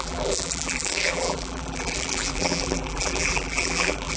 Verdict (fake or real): fake